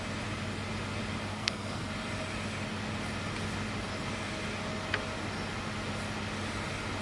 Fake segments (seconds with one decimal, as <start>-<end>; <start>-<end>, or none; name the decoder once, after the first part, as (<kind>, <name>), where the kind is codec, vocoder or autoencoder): 1.3-1.9 (codec, SNAC)